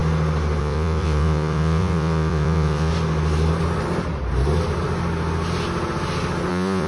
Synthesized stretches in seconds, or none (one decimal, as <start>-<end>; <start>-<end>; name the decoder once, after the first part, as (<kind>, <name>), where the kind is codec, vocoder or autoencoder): 0.6-2.9 (vocoder, Vocos); 6.5-6.9